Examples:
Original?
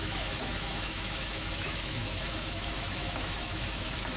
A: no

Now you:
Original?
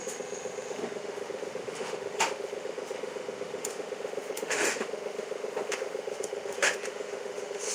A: no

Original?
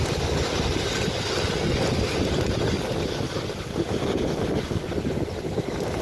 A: yes